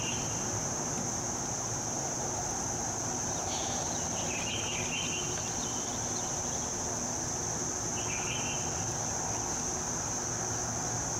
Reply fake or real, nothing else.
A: real